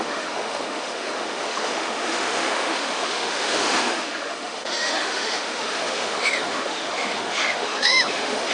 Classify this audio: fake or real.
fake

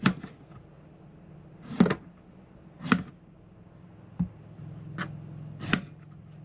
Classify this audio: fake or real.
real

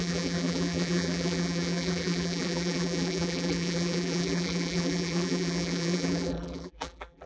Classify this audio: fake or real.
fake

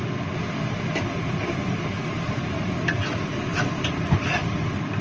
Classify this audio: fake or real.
real